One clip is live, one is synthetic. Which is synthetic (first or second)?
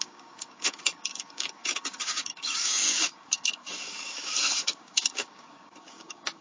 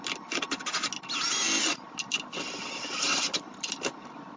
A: first